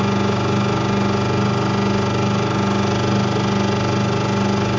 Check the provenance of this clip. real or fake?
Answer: real